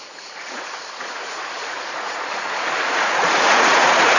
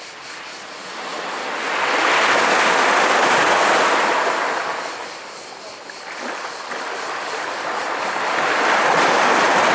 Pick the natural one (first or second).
second